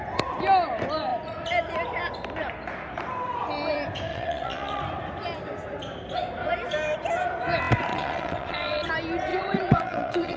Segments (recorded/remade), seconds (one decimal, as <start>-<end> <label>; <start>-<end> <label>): 0.0-4.1 recorded; 4.1-4.8 remade; 4.8-7.9 recorded; 7.9-8.9 remade; 8.9-9.3 recorded; 9.3-10.4 remade